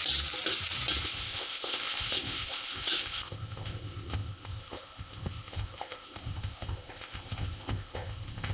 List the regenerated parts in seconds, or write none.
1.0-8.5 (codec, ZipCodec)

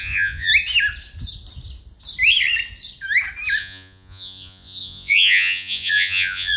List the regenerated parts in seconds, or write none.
0.0-0.5 (vocoder, Vocos); 3.6-6.6